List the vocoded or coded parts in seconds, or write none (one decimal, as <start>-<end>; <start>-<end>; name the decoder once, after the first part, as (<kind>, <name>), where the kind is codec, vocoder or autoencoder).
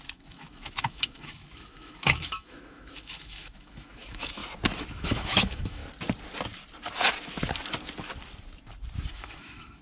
0.0-4.4 (autoencoder, DAC-VAE); 4.9-5.8; 9.1-9.8